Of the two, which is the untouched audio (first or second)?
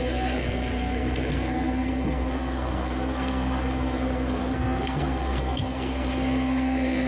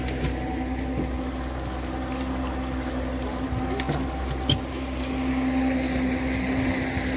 second